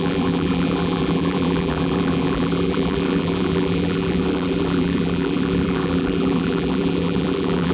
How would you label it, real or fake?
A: fake